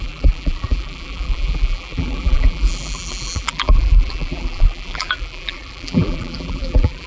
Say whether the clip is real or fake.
fake